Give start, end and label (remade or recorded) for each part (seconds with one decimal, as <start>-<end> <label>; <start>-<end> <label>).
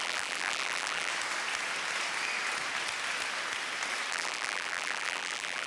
0.0-1.1 remade; 1.1-4.1 recorded; 4.1-5.7 remade